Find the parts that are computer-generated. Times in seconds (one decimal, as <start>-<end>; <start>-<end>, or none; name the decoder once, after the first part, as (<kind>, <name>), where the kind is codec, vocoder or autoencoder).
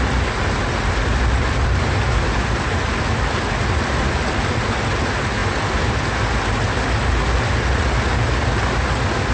1.1-4.9 (vocoder, BigVGAN v2)